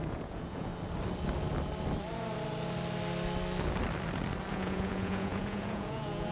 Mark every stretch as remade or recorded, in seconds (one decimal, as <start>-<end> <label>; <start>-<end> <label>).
0.0-0.7 remade; 0.7-4.5 recorded; 4.5-6.3 remade